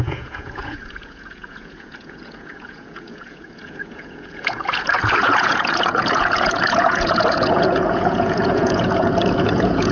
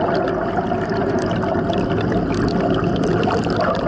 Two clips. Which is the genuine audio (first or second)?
second